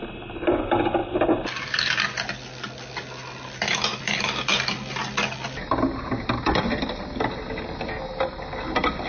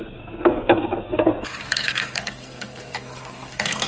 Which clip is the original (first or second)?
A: first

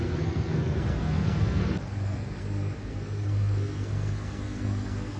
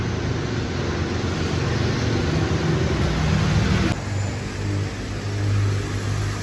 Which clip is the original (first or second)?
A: second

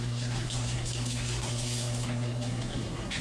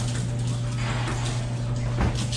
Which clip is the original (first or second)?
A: second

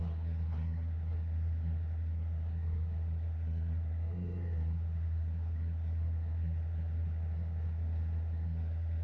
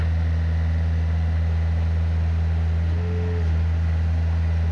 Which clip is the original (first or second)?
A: second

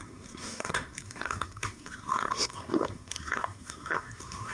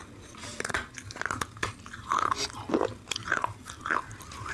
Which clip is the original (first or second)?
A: second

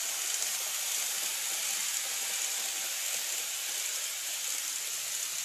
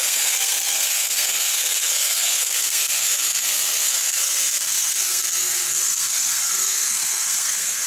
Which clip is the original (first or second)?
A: first